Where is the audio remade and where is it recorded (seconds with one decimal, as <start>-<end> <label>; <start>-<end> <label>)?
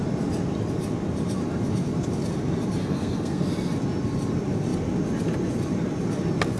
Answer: 0.0-2.8 recorded; 2.8-3.4 remade; 3.4-6.6 recorded